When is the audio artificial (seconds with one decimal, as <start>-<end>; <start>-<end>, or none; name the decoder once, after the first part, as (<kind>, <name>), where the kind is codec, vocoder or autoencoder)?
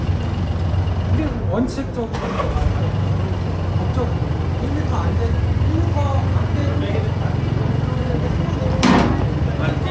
none